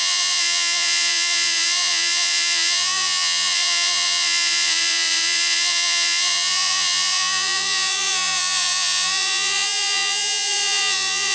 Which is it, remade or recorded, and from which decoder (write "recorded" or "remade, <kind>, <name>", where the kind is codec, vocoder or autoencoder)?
remade, vocoder, Vocos